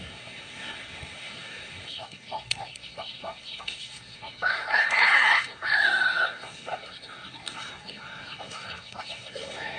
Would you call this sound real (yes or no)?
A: no